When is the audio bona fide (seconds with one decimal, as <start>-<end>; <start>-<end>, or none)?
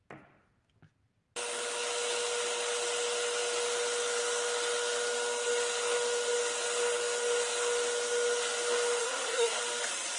0.0-9.0; 9.6-10.2